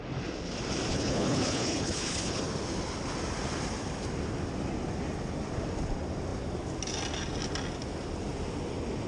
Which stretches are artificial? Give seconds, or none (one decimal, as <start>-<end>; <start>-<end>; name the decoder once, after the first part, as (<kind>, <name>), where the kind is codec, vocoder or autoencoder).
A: 0.9-2.4 (codec, HILCodec)